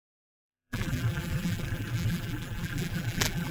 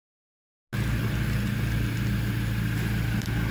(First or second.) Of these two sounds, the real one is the second